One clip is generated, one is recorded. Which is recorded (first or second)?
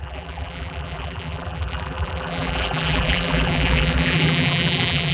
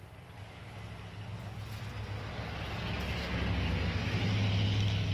second